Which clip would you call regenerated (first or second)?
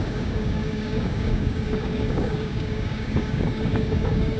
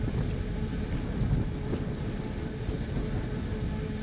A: first